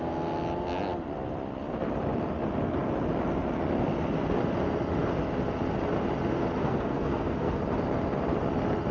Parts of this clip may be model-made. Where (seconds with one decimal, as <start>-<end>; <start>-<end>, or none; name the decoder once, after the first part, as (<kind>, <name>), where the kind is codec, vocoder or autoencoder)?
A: 6.6-7.6 (codec, SNAC)